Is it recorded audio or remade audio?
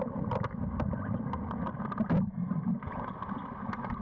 recorded